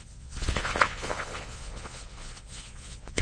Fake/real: fake